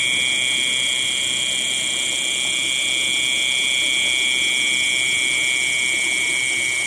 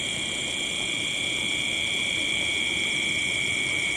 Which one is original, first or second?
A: first